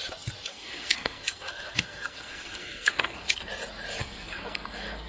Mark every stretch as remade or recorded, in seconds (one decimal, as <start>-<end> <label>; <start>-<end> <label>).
0.0-0.5 recorded; 0.5-3.5 remade; 3.5-4.0 recorded; 4.0-5.1 remade